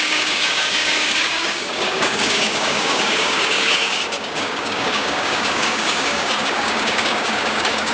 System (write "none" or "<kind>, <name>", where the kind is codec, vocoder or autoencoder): codec, DAC